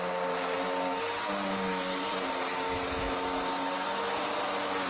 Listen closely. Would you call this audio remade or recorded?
recorded